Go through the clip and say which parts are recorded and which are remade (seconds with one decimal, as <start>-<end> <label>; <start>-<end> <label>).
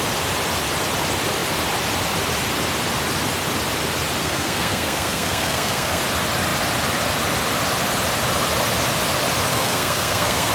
0.0-4.2 recorded; 4.2-6.0 remade; 6.0-9.5 recorded; 9.5-10.5 remade